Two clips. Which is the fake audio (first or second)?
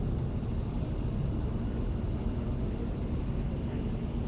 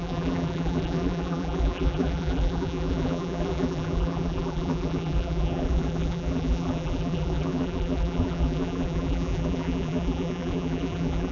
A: second